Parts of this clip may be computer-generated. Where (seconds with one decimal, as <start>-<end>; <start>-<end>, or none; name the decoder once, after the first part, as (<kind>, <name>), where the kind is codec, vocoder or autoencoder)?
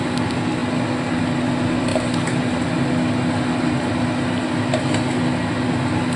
none